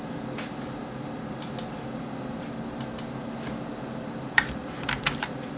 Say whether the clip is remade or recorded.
recorded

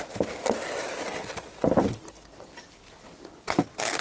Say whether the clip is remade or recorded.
recorded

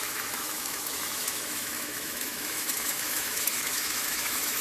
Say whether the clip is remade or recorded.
remade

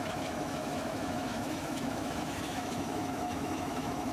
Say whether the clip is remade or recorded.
remade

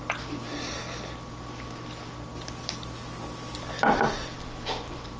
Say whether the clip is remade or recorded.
recorded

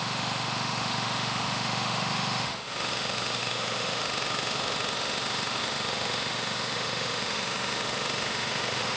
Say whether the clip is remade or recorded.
remade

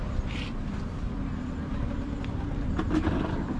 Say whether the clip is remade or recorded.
recorded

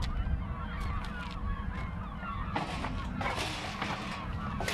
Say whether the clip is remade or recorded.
recorded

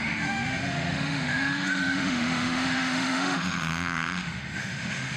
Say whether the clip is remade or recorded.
remade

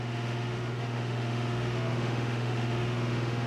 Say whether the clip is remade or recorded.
remade